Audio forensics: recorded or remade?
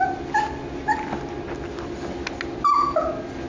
recorded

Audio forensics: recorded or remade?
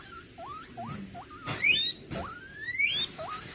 recorded